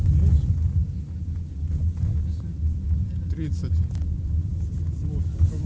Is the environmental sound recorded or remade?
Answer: recorded